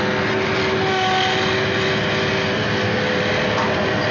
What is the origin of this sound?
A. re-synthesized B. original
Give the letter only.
B